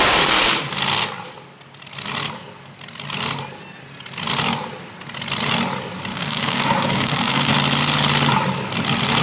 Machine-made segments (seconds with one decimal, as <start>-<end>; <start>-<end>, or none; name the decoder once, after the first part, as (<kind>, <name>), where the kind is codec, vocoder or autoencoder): 6.1-7.5 (codec, DAC)